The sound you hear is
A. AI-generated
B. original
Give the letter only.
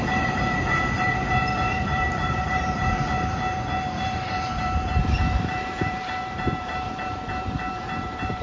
A